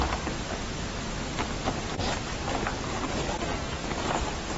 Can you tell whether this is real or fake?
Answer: real